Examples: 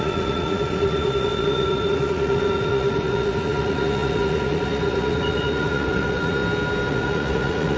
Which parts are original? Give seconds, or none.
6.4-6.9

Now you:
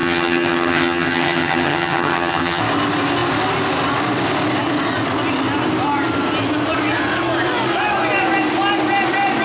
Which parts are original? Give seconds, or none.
2.6-9.4

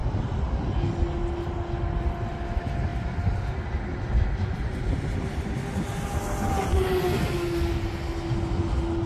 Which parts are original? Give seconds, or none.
0.0-9.1

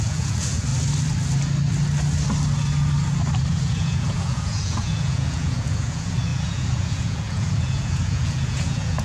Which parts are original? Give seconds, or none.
0.7-3.5

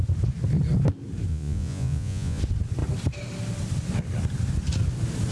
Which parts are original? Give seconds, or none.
0.0-1.3; 2.4-5.3

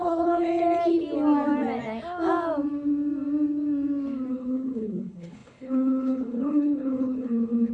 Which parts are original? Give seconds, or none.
0.5-4.3

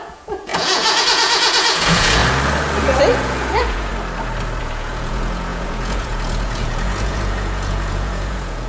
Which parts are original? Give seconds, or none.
2.2-2.8; 3.9-4.6

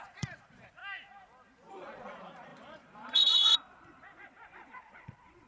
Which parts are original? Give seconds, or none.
0.8-1.7